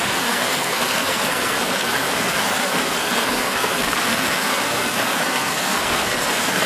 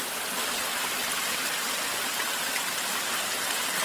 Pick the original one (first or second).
second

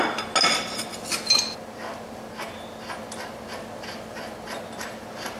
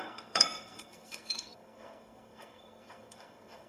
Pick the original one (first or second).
first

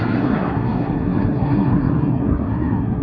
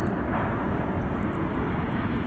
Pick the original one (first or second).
second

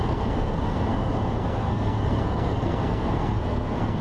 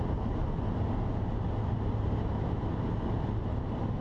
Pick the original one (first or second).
second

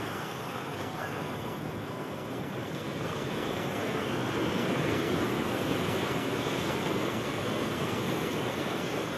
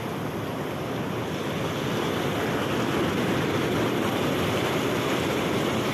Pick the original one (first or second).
second